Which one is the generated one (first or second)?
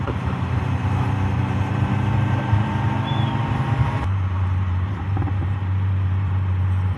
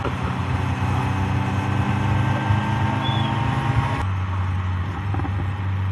first